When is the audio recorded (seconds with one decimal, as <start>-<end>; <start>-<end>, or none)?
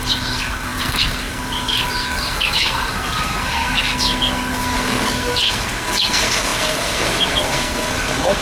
none